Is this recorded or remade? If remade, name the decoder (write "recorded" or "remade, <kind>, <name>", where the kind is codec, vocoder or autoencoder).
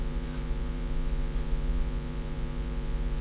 remade, vocoder, Vocos